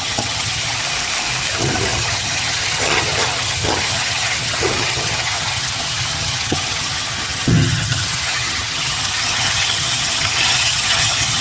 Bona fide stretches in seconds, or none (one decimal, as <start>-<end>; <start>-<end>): 0.8-1.5

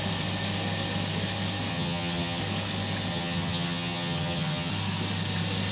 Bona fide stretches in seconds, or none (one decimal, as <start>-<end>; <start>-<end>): 0.0-1.7; 2.4-3.1; 4.7-5.7

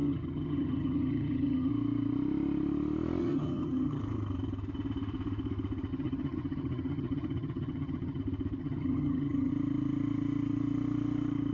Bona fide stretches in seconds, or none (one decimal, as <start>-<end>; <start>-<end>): 1.7-3.2; 4.0-5.9; 8.2-8.6; 9.5-11.5

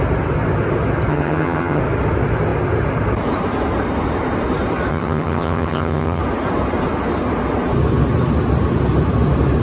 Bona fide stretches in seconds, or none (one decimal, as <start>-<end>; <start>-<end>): 0.0-1.1; 1.8-4.9; 6.2-9.6